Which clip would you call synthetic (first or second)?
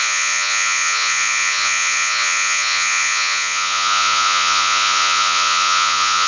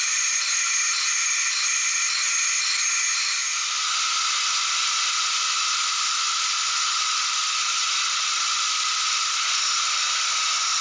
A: first